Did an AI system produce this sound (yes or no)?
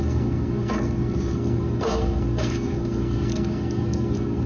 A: yes